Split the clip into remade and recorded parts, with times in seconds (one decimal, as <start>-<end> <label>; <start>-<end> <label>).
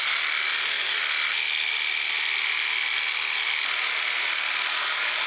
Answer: 0.0-5.3 recorded